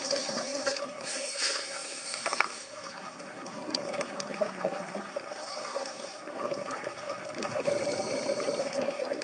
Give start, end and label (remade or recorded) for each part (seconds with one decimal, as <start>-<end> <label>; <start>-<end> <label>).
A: 0.0-7.7 remade; 7.7-8.6 recorded; 8.6-9.2 remade